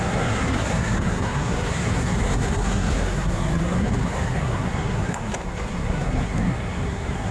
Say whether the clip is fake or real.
fake